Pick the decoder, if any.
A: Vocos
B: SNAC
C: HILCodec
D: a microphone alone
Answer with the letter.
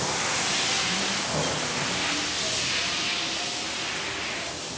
D